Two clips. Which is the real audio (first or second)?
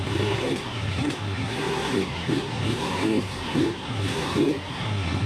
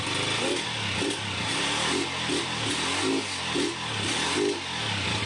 second